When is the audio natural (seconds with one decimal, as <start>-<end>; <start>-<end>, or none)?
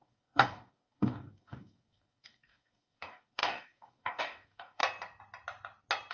4.8-6.1